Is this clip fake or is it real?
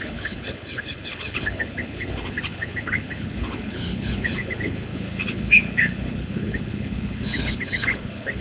fake